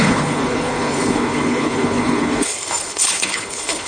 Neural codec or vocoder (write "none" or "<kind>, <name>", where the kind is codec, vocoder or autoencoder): codec, HILCodec